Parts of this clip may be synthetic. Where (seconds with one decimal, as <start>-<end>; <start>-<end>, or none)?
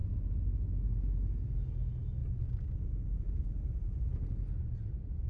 2.2-4.1